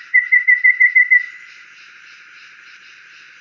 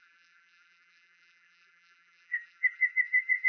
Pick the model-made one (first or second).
second